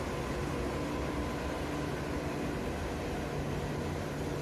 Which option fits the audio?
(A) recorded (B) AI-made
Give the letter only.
A